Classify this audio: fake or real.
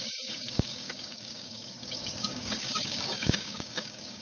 fake